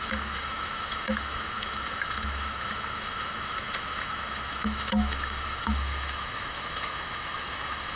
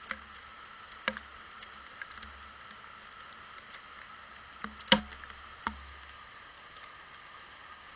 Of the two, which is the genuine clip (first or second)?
second